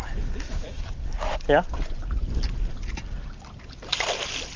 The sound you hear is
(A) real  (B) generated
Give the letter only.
A